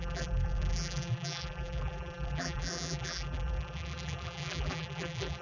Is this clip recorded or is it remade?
remade